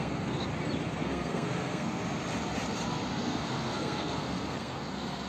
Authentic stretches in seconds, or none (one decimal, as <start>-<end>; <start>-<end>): 0.5-1.0; 2.0-3.1